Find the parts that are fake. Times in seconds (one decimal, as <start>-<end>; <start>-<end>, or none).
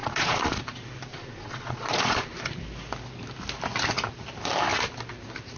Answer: 0.0-0.6; 1.1-2.3